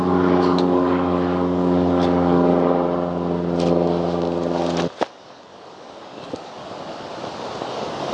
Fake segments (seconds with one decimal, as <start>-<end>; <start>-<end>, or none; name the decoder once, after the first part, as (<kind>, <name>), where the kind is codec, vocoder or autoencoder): 0.0-2.5 (codec, DAC); 5.1-7.1; 7.6-8.1